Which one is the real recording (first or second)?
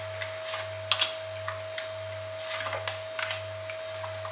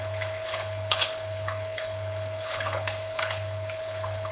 first